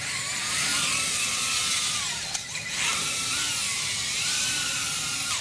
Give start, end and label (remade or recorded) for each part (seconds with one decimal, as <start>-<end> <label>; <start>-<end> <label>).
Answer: 0.0-0.7 remade; 0.7-2.4 recorded; 2.4-5.4 remade

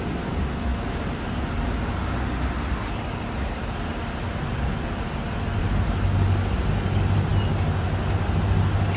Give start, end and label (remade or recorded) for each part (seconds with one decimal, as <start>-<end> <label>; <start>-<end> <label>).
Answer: 0.0-9.0 recorded